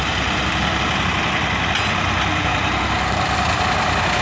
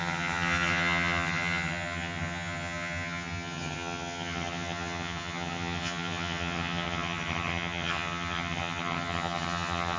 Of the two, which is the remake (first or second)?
second